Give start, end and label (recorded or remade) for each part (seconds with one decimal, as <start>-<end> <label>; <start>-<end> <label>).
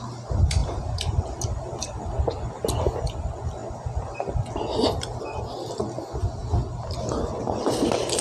0.0-0.6 recorded; 0.6-2.2 remade; 2.2-8.2 recorded